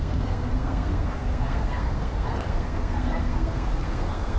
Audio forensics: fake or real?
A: fake